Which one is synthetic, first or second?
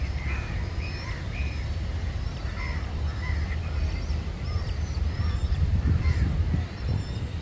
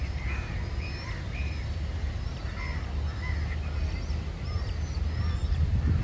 first